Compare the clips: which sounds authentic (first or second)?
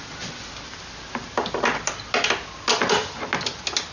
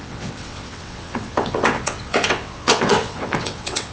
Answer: first